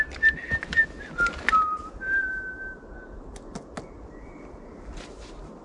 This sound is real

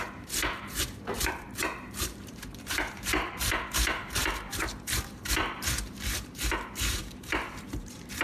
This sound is fake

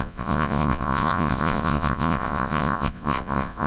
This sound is fake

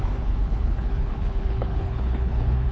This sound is fake